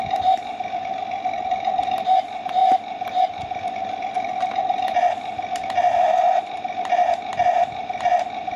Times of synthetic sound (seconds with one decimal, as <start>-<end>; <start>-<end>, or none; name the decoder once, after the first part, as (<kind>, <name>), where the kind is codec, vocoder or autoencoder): none